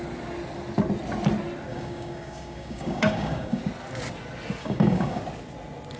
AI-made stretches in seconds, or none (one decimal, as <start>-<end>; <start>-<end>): 1.7-3.6; 4.6-5.2